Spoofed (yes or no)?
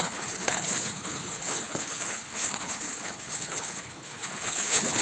yes